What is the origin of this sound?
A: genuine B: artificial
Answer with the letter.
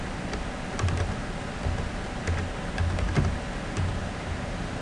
A